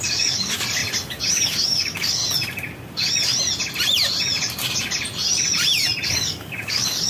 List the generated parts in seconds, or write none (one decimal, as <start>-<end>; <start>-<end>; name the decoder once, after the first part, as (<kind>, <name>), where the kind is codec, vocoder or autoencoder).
0.0-0.8 (codec, DAC); 1.3-2.2; 6.1-7.1